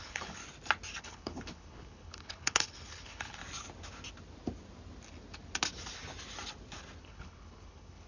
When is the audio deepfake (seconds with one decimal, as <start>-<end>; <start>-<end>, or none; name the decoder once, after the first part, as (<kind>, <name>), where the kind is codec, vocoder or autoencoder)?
0.0-0.4 (codec, HILCodec); 1.0-3.4; 7.0-8.1